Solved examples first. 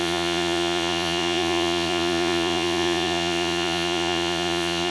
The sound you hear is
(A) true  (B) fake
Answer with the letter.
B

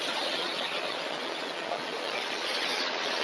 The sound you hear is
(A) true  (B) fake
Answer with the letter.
B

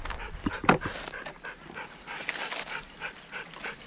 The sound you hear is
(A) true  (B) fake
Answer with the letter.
A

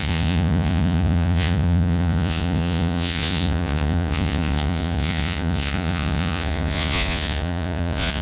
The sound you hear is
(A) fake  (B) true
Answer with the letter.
A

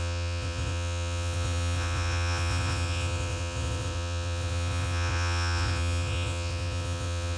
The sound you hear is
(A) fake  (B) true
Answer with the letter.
A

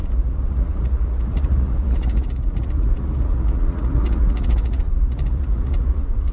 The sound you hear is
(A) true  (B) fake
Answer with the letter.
B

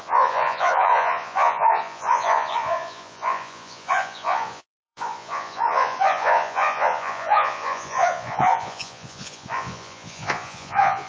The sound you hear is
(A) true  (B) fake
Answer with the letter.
B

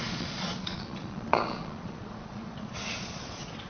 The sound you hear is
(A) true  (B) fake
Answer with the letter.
B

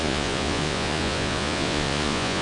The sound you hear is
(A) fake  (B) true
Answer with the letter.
A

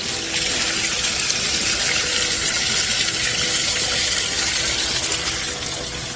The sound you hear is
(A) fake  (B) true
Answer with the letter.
B